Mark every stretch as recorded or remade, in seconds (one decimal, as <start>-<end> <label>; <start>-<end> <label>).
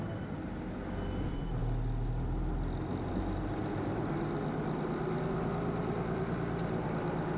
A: 0.0-7.4 recorded